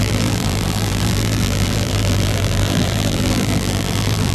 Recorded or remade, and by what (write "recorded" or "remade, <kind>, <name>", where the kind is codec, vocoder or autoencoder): remade, vocoder, BigVGAN v2